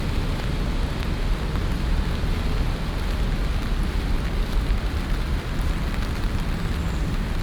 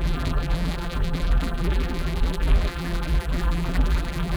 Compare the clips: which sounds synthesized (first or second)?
second